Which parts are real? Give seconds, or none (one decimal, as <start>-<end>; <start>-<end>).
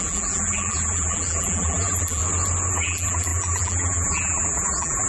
2.2-2.7